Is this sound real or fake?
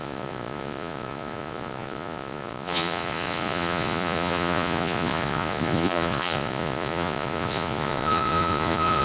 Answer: fake